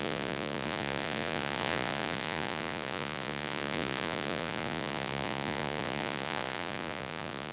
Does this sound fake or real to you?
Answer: fake